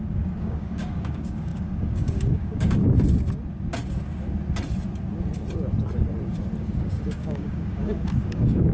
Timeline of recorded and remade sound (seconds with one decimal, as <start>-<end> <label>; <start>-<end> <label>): 0.0-2.8 remade; 2.8-6.6 recorded; 6.6-8.7 remade